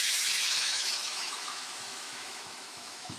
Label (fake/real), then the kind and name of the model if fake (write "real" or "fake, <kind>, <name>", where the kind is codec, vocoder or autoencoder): fake, autoencoder, DAC-VAE